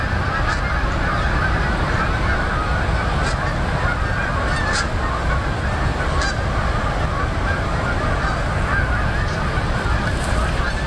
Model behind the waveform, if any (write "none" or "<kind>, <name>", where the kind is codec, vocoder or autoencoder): none